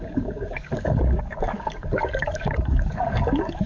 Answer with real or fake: fake